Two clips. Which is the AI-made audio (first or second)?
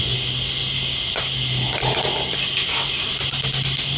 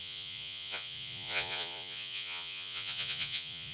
second